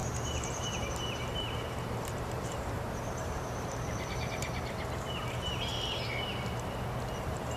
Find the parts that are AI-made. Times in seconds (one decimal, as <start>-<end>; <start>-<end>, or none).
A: 0.0-5.7; 7.0-7.6